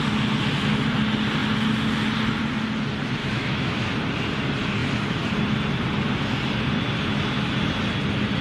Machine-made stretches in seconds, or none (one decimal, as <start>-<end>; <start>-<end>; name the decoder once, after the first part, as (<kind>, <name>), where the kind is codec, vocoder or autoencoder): 3.2-3.9 (autoencoder, DAC-VAE)